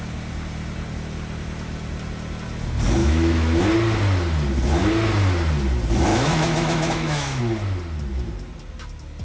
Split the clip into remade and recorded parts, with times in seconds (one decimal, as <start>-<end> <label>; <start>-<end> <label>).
0.0-3.0 recorded; 3.0-3.6 remade; 3.6-6.1 recorded; 6.1-7.4 remade; 7.4-9.2 recorded